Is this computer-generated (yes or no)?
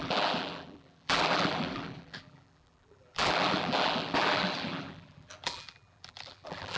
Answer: yes